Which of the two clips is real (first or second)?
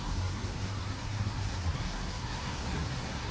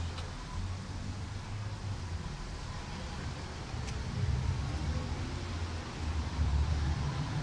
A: second